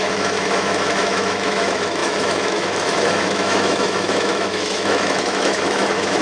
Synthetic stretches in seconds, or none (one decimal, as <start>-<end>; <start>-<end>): 0.0-6.2